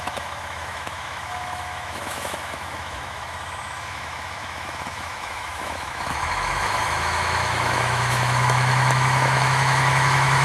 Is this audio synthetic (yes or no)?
yes